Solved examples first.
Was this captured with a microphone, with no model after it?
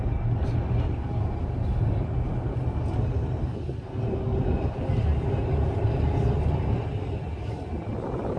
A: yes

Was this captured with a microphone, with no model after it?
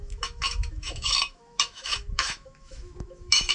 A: no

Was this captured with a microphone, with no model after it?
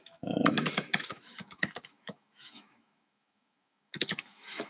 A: no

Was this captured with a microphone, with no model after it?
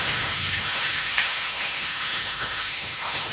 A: no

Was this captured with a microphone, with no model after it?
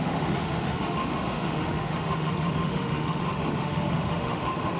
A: no